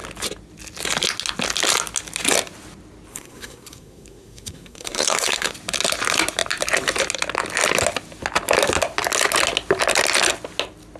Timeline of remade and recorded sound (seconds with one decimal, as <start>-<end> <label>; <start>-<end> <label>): 0.0-3.1 recorded; 3.1-5.5 remade; 5.5-11.0 recorded